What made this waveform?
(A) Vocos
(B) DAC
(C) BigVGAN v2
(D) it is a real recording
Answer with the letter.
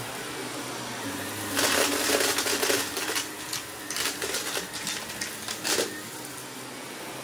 D